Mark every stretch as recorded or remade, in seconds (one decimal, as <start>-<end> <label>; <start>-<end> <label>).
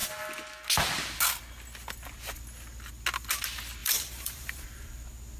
0.0-3.8 recorded; 3.8-4.6 remade; 4.6-5.4 recorded